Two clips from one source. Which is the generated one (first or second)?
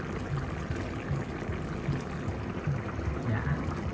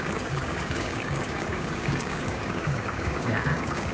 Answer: second